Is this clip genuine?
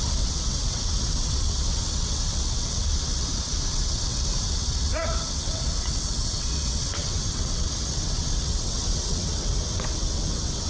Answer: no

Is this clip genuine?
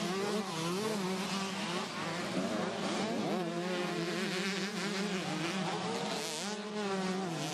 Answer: yes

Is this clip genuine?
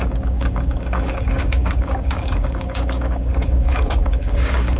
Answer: no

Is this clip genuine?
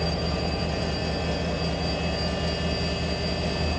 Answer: yes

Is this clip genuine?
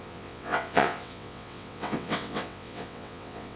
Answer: no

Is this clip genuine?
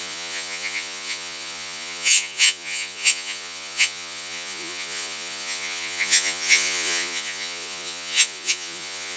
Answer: no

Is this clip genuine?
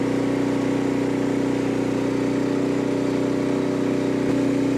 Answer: yes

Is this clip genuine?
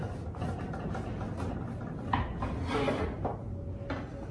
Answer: yes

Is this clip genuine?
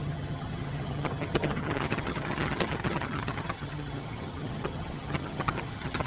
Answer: no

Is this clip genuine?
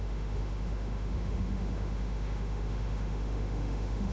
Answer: no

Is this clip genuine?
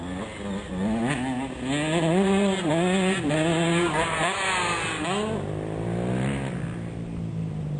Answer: yes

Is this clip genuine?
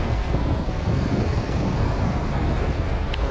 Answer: no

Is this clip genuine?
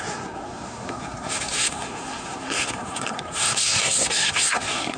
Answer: no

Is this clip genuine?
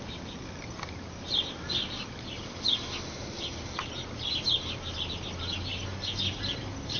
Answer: yes